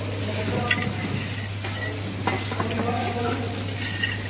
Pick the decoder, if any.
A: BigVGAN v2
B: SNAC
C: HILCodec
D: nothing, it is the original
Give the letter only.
D